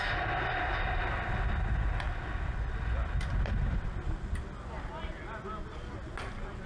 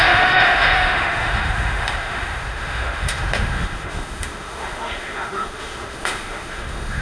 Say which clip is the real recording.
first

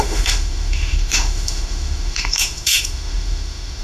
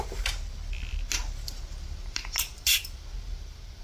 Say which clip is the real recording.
second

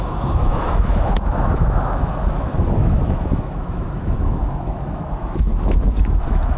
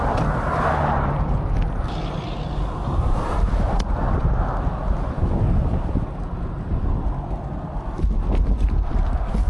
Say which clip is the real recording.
second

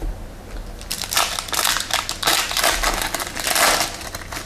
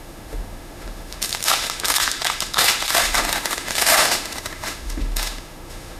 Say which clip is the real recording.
first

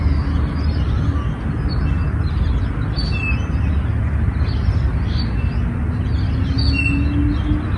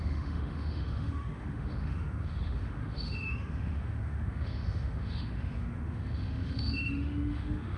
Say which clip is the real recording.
first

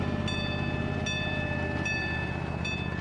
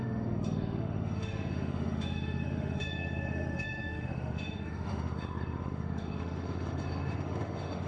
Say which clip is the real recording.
first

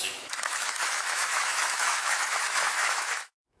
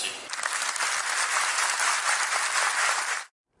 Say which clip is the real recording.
second